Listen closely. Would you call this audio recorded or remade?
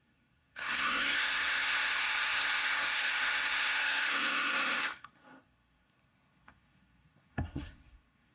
remade